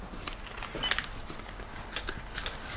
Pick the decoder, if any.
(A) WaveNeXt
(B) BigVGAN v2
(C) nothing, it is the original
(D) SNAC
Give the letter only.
C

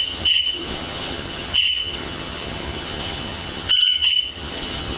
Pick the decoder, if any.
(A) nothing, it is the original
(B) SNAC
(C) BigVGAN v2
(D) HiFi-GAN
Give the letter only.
D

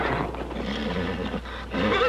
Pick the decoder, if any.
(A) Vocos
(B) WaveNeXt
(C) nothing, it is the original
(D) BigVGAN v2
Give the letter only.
C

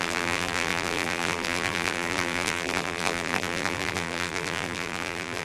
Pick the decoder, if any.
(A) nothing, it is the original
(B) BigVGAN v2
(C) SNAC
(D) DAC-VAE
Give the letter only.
B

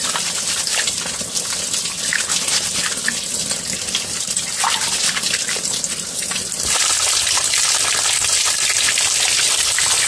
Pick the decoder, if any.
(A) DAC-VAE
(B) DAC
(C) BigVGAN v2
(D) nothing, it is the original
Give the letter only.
D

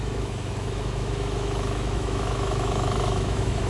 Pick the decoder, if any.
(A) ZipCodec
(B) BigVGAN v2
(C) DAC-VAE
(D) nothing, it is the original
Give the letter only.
C